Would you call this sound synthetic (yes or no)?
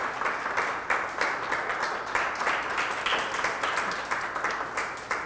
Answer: no